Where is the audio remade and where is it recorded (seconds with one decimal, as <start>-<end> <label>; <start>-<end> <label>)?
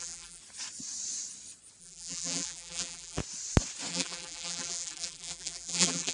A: 0.0-0.4 remade; 0.4-1.8 recorded; 1.8-3.2 remade; 3.2-3.9 recorded; 3.9-6.1 remade